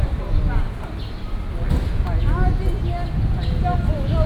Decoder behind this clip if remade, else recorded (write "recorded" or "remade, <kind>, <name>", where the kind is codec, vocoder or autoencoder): recorded